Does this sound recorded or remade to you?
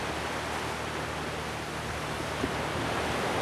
recorded